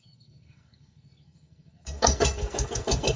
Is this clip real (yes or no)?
no